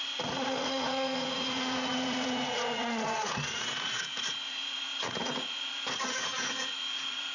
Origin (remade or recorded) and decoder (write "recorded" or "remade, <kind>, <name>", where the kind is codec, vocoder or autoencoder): remade, vocoder, Vocos